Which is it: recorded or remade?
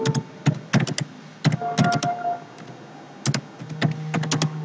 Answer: recorded